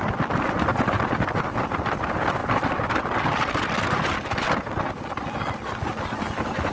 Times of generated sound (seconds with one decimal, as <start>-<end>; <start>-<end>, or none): none